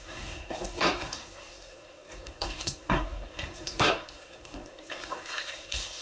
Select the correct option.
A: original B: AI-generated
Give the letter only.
B